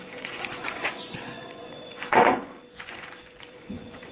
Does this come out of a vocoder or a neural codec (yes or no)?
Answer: yes